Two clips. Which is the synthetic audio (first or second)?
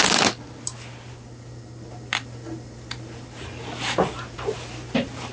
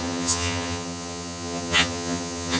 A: second